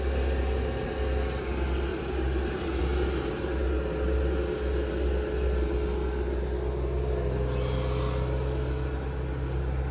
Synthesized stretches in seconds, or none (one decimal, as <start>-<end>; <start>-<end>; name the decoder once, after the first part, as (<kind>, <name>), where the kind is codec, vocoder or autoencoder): 1.9-2.8 (vocoder, BigVGAN v2)